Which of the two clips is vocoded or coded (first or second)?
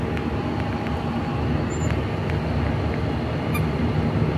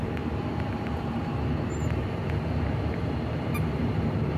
second